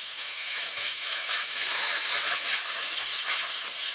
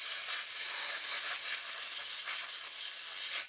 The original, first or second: second